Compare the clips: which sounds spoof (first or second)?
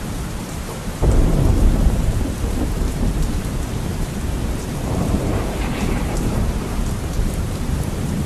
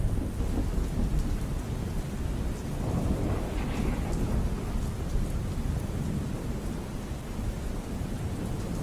first